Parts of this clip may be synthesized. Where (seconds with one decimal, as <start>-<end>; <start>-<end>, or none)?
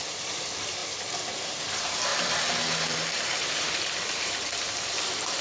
0.0-0.8; 1.4-5.4